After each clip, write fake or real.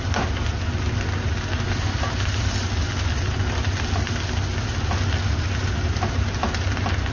real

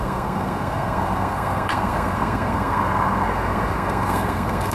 fake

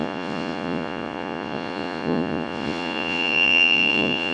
fake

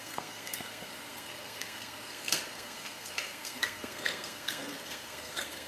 fake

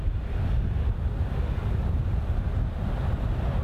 real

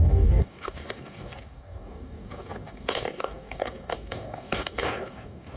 fake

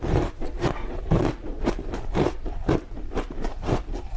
fake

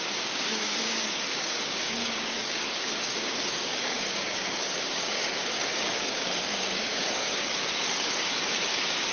fake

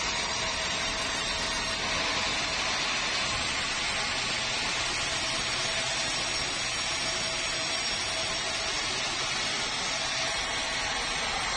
real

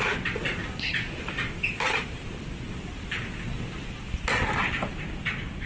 real